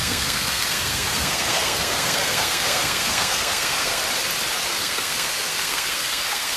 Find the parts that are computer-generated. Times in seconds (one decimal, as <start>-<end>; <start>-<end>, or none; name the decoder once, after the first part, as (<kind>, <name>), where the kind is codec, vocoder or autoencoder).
0.0-4.0 (codec, SNAC); 4.7-6.6